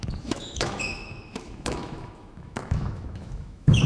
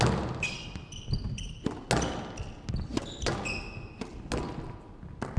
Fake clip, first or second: first